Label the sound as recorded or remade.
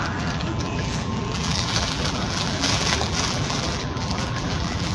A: remade